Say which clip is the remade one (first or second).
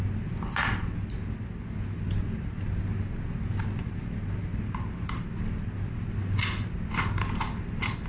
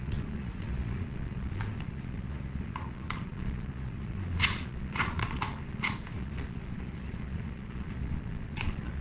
second